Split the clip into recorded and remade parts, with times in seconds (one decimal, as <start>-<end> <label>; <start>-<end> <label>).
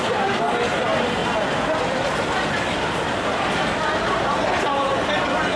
0.0-5.6 recorded